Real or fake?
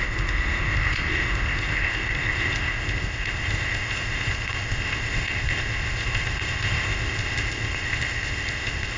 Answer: fake